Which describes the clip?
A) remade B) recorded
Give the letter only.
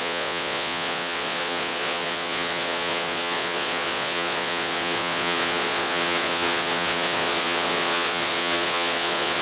A